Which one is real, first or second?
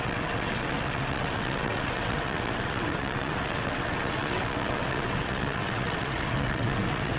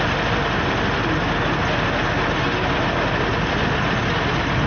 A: second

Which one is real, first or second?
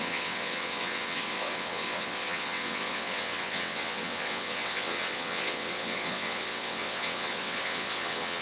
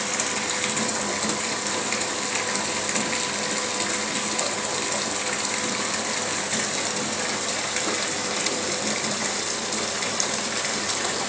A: second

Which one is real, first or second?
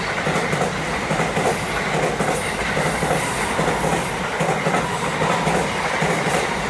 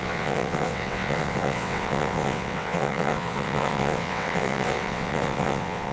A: first